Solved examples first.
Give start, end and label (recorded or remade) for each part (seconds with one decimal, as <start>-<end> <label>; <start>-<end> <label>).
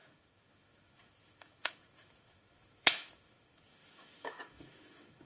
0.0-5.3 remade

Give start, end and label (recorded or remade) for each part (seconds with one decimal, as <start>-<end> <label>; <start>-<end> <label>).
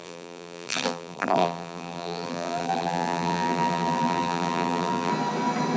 0.0-5.1 remade; 5.1-5.8 recorded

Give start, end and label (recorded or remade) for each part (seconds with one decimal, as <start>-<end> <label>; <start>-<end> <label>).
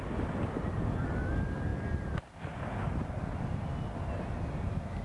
0.0-5.0 recorded